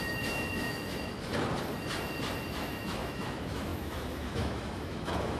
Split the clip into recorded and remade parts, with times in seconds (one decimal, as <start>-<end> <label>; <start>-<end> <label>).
0.0-1.3 remade; 1.3-2.5 recorded; 2.5-5.4 remade

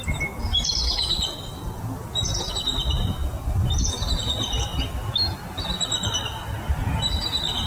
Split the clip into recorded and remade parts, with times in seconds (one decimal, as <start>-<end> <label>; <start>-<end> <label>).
0.0-7.7 recorded

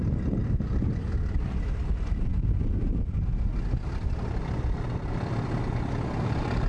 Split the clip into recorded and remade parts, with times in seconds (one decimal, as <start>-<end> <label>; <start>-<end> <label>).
0.0-6.7 recorded

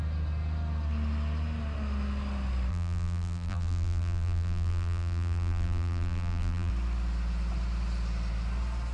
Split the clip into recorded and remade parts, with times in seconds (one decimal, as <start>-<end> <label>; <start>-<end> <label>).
0.0-2.7 recorded; 2.7-6.7 remade; 6.7-8.9 recorded

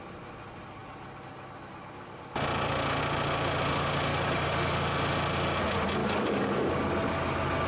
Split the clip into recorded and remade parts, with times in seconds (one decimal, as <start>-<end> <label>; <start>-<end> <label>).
0.0-4.1 recorded; 4.1-4.7 remade; 4.7-6.0 recorded; 6.0-6.7 remade; 6.7-7.7 recorded

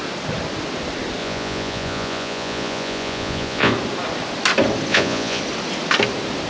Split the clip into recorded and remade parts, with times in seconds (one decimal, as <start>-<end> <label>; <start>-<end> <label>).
0.0-1.2 recorded; 1.2-3.7 remade; 3.7-4.9 recorded; 4.9-5.4 remade; 5.4-6.5 recorded

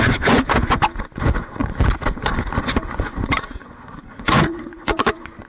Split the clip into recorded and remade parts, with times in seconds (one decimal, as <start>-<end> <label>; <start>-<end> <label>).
0.0-1.6 remade; 1.6-2.6 recorded; 2.6-5.5 remade